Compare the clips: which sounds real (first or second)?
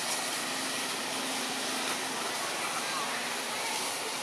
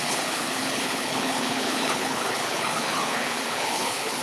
first